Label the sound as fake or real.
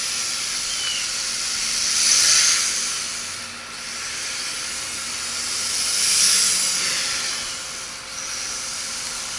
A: real